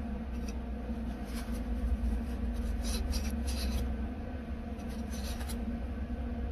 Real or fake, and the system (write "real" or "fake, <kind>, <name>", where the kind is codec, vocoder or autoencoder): real